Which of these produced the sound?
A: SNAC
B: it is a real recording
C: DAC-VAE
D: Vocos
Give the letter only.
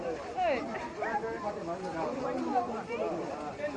B